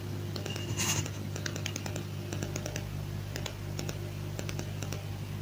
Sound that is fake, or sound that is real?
real